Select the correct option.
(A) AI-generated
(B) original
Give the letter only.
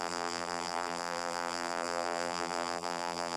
A